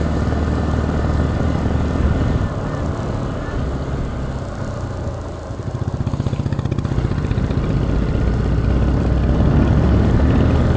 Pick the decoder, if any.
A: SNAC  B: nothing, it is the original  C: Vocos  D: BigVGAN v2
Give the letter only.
B